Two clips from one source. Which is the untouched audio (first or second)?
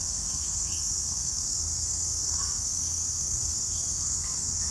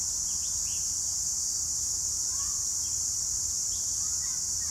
second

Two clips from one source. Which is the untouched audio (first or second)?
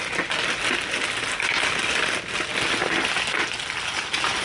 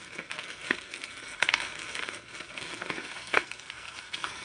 first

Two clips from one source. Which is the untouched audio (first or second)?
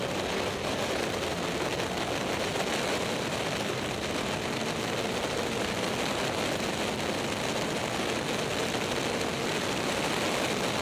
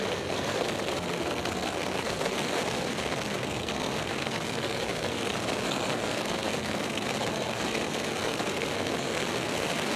first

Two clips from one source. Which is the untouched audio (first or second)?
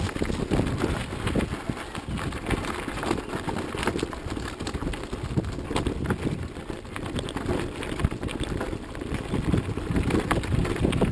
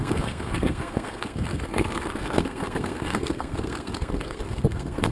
first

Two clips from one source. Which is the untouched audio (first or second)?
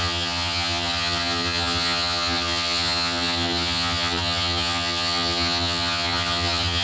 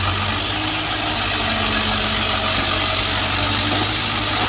second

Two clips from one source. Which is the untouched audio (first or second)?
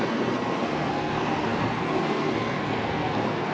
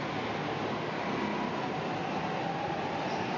second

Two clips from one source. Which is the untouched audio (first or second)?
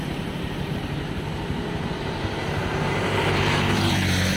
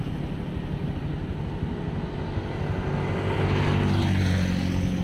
second